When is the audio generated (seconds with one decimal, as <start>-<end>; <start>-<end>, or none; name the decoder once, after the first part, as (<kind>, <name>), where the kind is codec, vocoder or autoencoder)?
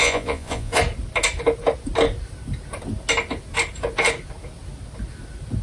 0.0-0.8 (vocoder, Vocos)